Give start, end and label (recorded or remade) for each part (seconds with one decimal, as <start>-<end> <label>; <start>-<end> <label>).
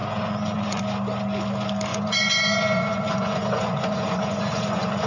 0.0-0.8 remade; 0.8-1.9 recorded; 1.9-5.1 remade